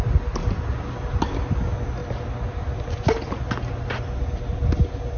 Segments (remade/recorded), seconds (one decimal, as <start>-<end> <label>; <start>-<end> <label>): 0.0-5.2 recorded